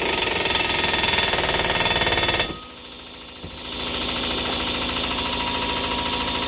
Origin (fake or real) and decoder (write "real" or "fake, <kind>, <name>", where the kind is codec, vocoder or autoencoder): real